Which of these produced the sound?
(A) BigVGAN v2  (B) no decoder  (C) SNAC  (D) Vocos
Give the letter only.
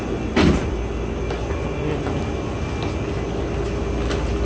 B